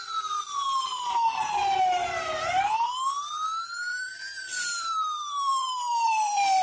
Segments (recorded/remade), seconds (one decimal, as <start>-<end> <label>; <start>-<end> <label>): 0.0-0.9 remade; 0.9-3.7 recorded; 3.7-6.6 remade